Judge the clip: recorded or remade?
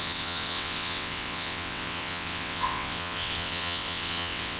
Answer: remade